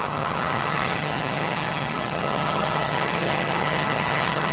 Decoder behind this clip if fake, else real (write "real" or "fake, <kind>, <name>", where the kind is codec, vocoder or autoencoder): fake, vocoder, HiFi-GAN